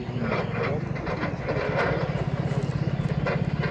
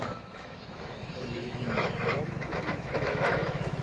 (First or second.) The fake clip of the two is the second